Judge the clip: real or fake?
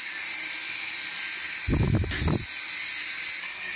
real